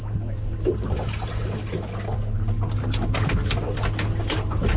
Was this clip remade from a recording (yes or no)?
no